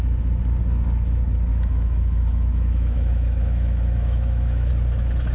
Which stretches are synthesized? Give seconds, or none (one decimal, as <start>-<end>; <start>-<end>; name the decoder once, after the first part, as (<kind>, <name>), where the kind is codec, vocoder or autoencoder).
1.5-4.7 (autoencoder, DAC-VAE)